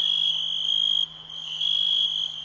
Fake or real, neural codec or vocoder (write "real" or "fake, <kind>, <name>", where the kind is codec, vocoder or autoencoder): real